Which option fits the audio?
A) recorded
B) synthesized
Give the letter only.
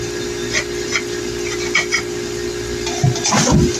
A